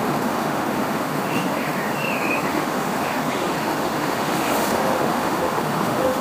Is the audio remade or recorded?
remade